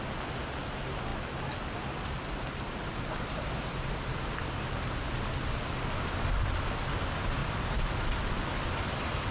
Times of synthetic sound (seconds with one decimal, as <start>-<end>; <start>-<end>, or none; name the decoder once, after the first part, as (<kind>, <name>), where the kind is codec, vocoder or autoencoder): none